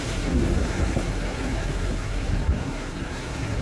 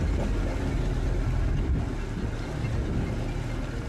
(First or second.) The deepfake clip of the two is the first